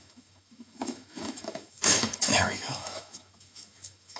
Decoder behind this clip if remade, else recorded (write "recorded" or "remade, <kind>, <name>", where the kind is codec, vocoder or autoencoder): remade, autoencoder, DAC-VAE